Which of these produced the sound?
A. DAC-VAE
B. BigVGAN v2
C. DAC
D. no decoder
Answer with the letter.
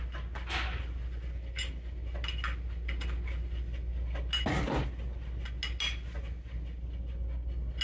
D